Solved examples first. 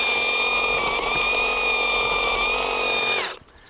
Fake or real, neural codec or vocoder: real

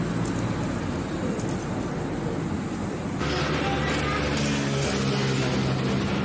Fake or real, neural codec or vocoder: real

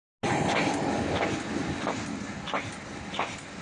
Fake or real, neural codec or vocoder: real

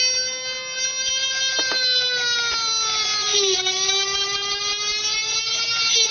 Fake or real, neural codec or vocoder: real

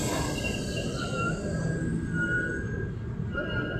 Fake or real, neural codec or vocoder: fake, vocoder, BigVGAN v2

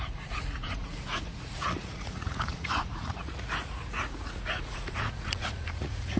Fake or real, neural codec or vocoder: fake, vocoder, Vocos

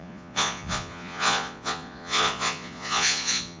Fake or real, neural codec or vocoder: fake, vocoder, Vocos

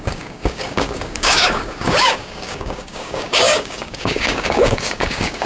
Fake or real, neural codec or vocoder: fake, codec, DAC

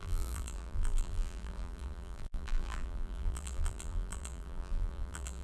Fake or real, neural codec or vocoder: fake, vocoder, BigVGAN v2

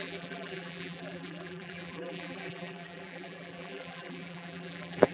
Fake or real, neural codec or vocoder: fake, vocoder, BigVGAN v2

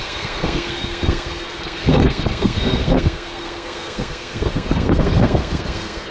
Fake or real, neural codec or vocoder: fake, codec, SNAC